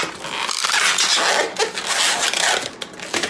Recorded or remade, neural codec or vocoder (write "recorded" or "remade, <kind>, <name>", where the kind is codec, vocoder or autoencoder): recorded